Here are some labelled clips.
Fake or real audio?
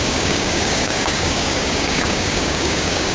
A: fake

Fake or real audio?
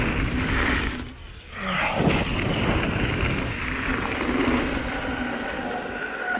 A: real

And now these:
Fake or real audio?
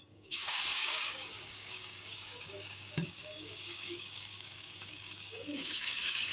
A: fake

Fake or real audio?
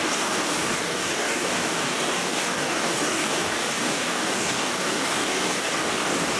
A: fake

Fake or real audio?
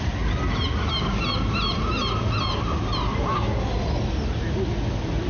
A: real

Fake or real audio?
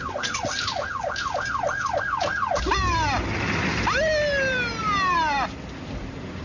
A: real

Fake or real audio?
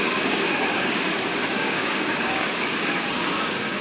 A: fake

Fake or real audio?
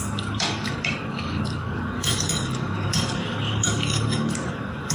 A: fake